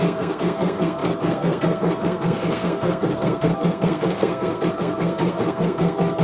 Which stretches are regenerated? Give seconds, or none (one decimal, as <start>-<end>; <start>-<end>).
0.0-6.2